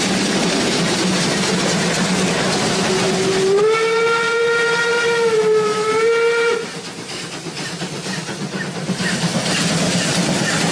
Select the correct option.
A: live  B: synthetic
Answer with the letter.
A